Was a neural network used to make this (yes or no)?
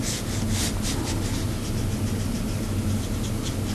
no